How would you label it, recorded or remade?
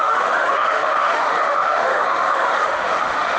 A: remade